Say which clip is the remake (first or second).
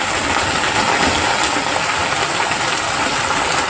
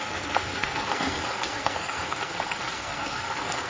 second